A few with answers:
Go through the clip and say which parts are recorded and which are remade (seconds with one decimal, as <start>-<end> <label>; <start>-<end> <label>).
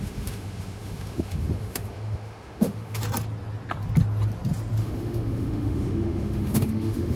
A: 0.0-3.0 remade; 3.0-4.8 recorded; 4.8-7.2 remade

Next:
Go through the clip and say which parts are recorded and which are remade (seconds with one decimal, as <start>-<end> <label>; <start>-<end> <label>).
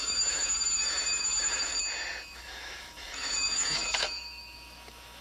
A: 0.0-1.7 remade; 1.7-2.2 recorded; 2.2-5.2 remade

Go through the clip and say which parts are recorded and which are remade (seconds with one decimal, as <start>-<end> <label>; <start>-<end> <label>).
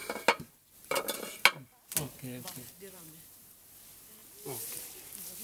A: 0.0-5.4 recorded